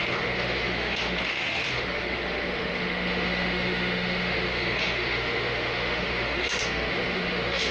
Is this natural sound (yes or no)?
no